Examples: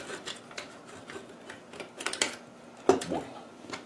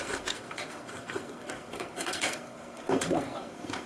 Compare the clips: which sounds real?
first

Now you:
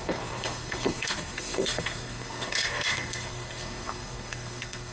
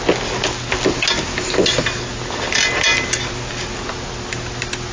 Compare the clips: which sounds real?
second